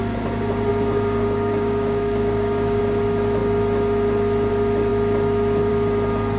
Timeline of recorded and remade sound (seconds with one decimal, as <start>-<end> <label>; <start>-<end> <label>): 0.0-0.7 recorded; 0.7-2.8 remade; 2.8-6.4 recorded